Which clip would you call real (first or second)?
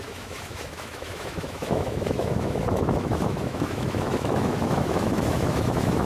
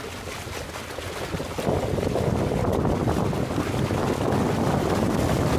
second